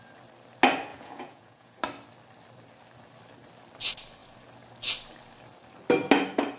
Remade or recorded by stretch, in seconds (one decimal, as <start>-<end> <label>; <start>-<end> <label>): 0.0-0.9 recorded; 0.9-1.8 remade; 1.8-6.6 recorded